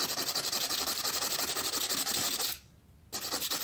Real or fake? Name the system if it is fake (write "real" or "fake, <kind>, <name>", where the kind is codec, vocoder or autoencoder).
real